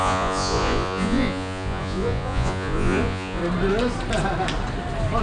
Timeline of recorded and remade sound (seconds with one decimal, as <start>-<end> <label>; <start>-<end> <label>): 0.0-3.4 remade; 3.4-5.2 recorded

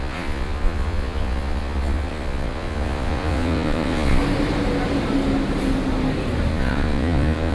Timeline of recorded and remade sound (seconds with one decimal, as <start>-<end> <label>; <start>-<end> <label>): 0.0-4.2 remade; 4.2-6.5 recorded; 6.5-7.5 remade

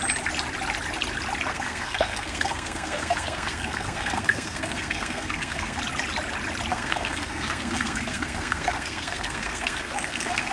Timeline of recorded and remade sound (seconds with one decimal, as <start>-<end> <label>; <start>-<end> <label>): 0.0-1.5 recorded; 1.5-5.8 remade; 5.8-6.7 recorded; 6.7-10.5 remade

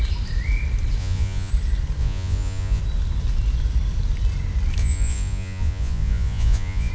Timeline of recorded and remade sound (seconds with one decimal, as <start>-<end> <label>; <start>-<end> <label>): 0.0-1.0 recorded; 1.0-1.5 remade; 1.5-2.0 recorded; 2.0-2.8 remade; 2.8-4.8 recorded; 4.8-6.9 remade

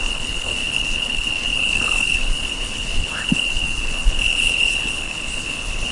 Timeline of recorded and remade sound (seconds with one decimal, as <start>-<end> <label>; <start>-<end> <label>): 0.0-5.9 remade

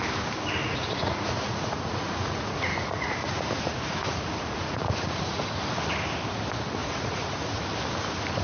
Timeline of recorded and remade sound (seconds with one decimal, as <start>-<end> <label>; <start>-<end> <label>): 0.0-0.6 recorded; 0.6-5.5 remade; 5.5-6.8 recorded; 6.8-7.6 remade; 7.6-8.4 recorded

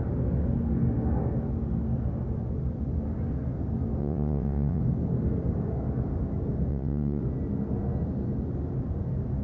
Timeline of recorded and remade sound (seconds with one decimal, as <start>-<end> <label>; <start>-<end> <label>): 0.0-4.0 recorded; 4.0-4.8 remade; 4.8-6.7 recorded; 6.7-7.2 remade; 7.2-9.4 recorded